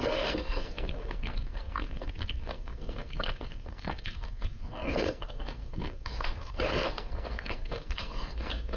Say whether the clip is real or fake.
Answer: fake